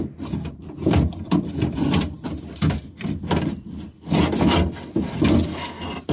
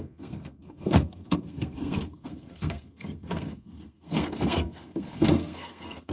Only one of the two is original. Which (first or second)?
first